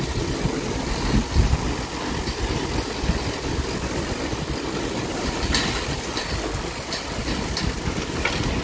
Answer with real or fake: real